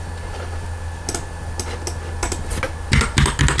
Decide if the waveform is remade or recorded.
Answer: recorded